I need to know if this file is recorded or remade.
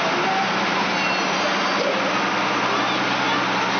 recorded